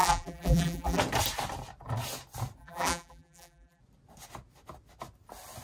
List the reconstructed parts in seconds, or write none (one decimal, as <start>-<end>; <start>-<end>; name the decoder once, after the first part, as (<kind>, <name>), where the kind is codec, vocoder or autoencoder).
0.0-1.0 (vocoder, BigVGAN v2); 2.6-3.8

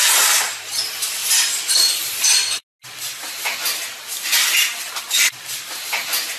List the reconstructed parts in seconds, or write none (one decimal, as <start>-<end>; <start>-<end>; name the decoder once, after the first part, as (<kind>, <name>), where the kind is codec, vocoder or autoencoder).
none